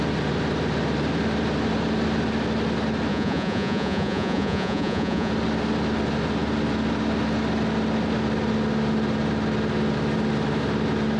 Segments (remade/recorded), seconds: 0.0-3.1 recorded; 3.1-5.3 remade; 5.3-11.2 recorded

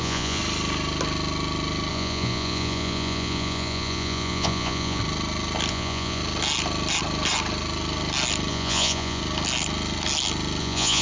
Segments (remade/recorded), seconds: 0.0-0.4 remade; 0.4-1.9 recorded; 1.9-5.0 remade; 5.0-5.7 recorded; 5.7-6.2 remade; 6.2-8.5 recorded; 8.5-9.2 remade; 9.2-10.6 recorded; 10.6-11.0 remade